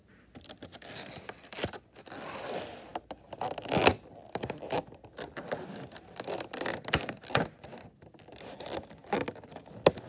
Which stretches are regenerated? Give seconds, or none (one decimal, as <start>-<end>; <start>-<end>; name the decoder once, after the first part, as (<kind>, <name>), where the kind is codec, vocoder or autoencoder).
none